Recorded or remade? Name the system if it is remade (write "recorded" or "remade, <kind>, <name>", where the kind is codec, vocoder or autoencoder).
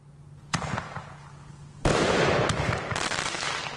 recorded